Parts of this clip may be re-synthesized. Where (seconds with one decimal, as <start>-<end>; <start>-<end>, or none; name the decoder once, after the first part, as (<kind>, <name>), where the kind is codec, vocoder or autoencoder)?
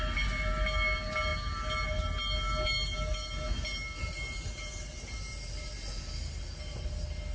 none